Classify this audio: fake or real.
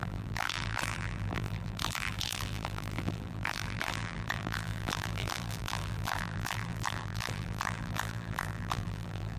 fake